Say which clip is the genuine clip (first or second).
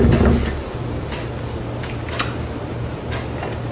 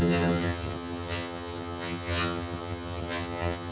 first